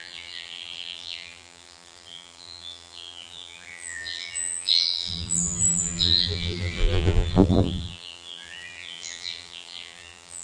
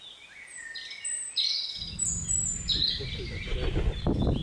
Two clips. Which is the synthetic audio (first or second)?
first